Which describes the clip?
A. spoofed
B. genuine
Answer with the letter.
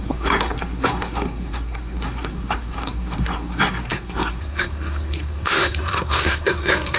A